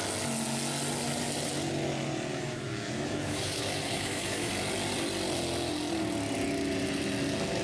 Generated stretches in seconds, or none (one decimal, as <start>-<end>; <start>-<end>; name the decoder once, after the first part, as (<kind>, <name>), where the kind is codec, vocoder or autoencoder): 2.3-4.5 (autoencoder, DAC-VAE)